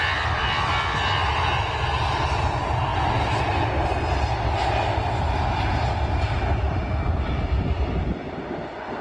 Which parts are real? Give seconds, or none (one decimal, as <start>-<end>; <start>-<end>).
0.0-9.0